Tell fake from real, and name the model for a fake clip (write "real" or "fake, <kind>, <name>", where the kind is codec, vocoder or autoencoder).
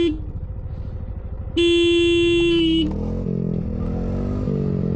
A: real